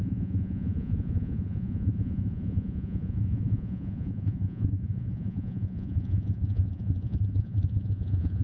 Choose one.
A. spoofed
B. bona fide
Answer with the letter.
A